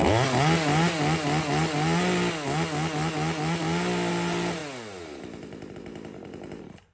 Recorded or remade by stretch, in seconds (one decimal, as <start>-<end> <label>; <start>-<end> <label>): 0.0-4.1 recorded; 4.1-4.6 remade; 4.6-5.2 recorded; 5.2-6.9 remade